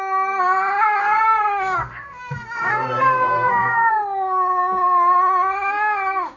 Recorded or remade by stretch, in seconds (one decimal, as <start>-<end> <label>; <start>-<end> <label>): 0.0-1.0 recorded; 1.0-3.9 remade; 3.9-6.4 recorded